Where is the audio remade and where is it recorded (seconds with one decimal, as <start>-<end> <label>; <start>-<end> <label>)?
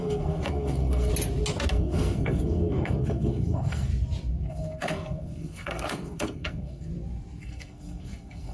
0.0-1.1 remade; 1.1-1.7 recorded; 1.7-3.9 remade; 3.9-4.5 recorded; 4.5-6.9 remade; 6.9-7.4 recorded; 7.4-8.5 remade